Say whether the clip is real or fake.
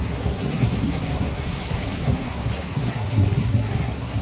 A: fake